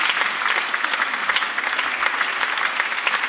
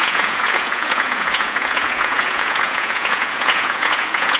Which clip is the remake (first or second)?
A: second